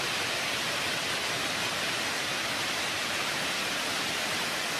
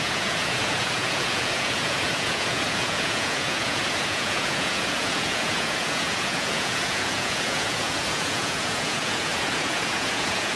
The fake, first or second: second